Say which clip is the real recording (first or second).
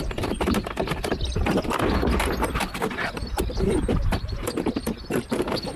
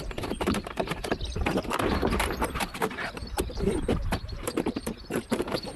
first